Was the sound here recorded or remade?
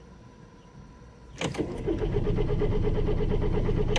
recorded